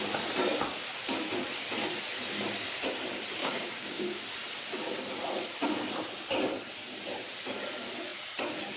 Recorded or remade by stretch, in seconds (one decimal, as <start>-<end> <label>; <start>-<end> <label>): 0.0-3.4 recorded; 3.4-4.2 remade; 4.2-8.8 recorded